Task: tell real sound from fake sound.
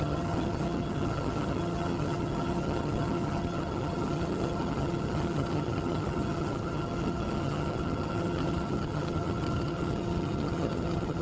fake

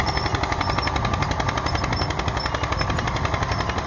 real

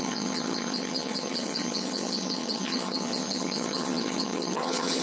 fake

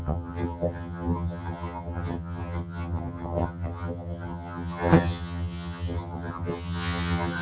fake